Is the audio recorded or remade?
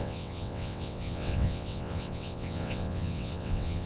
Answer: remade